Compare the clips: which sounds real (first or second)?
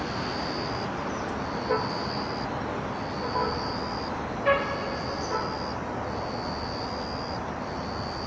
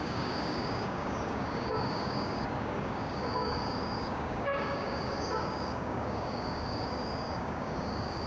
first